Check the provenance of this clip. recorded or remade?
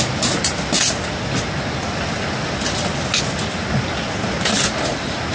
recorded